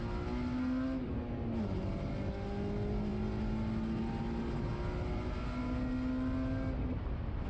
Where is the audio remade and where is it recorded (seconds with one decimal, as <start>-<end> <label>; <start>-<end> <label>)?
0.0-7.5 recorded